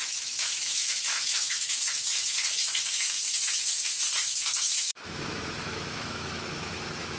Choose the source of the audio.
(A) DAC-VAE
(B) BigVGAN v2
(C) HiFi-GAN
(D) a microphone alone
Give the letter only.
A